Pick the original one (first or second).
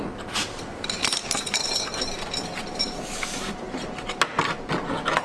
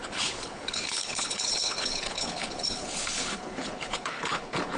first